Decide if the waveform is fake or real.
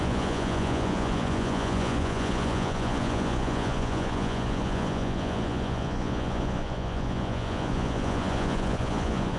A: fake